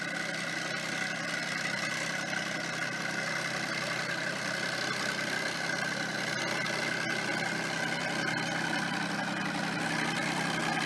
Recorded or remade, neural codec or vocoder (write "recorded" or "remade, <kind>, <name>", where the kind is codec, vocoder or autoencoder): recorded